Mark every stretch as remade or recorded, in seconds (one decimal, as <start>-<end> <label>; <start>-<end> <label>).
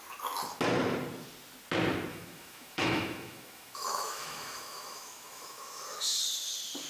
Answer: 0.0-2.1 recorded; 2.1-6.2 remade; 6.2-6.9 recorded